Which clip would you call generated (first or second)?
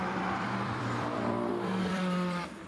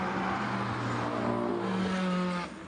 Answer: first